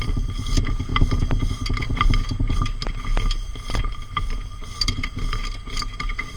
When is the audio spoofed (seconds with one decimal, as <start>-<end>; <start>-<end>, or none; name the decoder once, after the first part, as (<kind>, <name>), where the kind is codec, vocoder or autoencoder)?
3.5-5.2 (vocoder, BigVGAN v2)